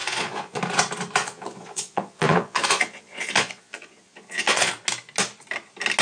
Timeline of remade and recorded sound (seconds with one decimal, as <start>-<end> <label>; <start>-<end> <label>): 0.0-0.6 remade; 0.6-1.2 recorded; 1.2-4.7 remade; 4.7-6.0 recorded

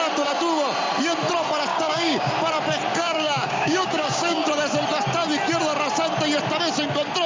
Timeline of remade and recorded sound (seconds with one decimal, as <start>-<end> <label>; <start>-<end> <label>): 0.0-1.7 recorded; 1.7-2.3 remade; 2.3-2.9 recorded; 2.9-4.5 remade; 4.5-7.3 recorded

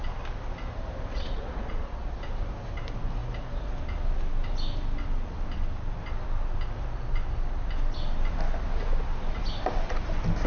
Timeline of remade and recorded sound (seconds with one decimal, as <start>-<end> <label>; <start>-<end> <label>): 0.0-1.1 recorded; 1.1-2.2 remade; 2.2-10.5 recorded

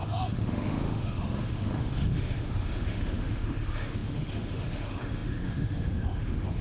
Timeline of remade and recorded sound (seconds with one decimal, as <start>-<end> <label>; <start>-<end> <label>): 0.0-6.6 remade

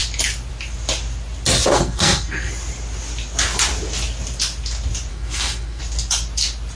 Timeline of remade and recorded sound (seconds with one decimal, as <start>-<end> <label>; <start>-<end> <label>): 0.0-1.7 recorded; 1.7-2.5 remade; 2.5-5.1 recorded; 5.1-5.8 remade; 5.8-6.7 recorded

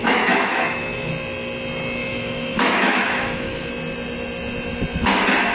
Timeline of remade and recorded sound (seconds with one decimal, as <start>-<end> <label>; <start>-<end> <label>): 0.0-1.1 remade; 1.1-2.0 recorded; 2.0-3.7 remade; 3.7-5.5 recorded

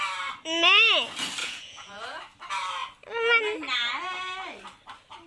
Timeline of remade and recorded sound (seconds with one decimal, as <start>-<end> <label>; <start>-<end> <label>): 0.0-1.4 recorded; 1.4-2.2 remade; 2.2-5.3 recorded